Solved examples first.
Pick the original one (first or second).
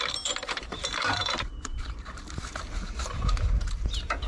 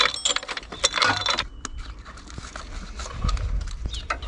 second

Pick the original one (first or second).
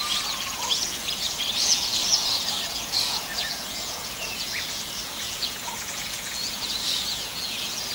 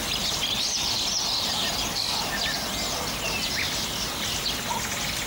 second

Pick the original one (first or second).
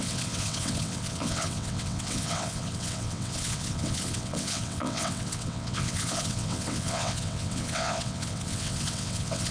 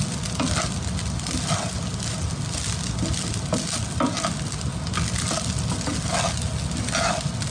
second